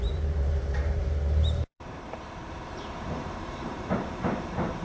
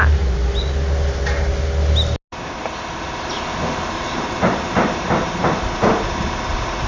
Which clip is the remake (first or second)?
first